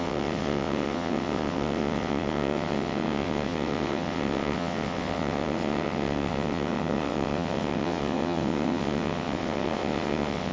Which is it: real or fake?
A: fake